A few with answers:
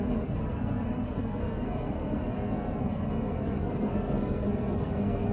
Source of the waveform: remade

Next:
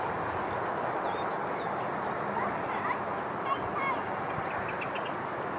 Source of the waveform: recorded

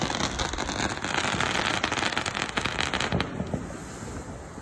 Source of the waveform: recorded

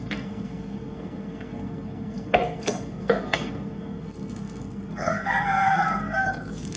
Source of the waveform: remade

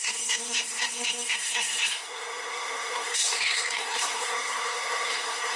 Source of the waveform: remade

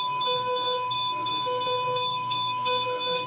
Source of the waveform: remade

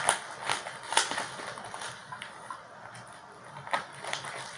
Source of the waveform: recorded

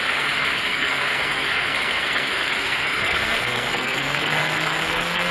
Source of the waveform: remade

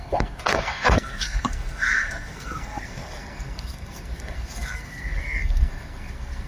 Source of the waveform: remade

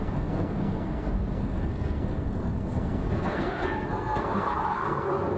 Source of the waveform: remade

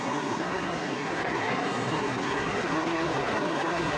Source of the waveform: remade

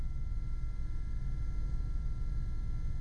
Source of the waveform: recorded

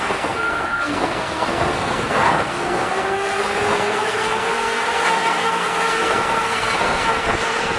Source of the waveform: remade